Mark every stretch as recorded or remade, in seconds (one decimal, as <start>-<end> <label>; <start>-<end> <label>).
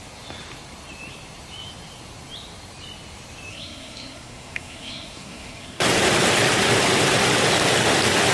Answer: 0.0-3.5 recorded; 3.5-5.8 remade; 5.8-8.3 recorded